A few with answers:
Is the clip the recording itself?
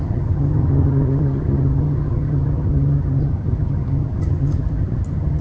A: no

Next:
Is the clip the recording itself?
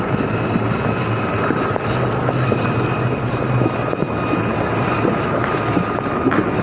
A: yes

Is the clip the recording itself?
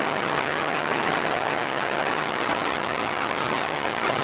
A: no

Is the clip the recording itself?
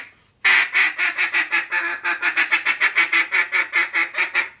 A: yes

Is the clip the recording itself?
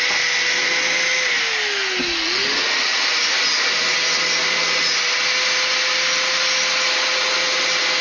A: yes